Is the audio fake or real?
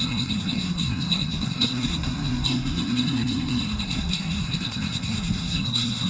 fake